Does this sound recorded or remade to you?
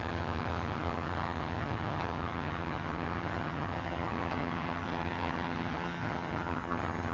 remade